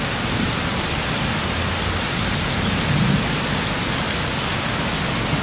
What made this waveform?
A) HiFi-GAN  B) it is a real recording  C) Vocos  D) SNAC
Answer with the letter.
B